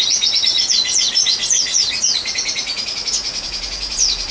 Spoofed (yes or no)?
yes